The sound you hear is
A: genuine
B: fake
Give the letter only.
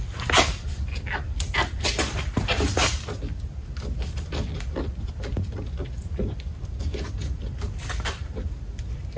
A